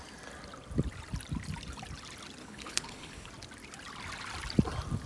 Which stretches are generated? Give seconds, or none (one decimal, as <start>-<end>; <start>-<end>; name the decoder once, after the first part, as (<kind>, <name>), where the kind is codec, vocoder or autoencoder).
2.4-3.3 (codec, HILCodec)